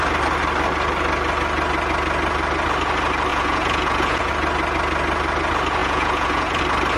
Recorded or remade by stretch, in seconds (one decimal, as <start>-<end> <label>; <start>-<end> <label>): 0.0-3.3 recorded; 3.3-4.3 remade; 4.3-5.8 recorded; 5.8-6.6 remade; 6.6-7.0 recorded